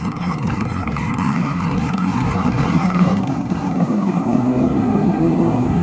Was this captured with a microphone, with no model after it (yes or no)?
no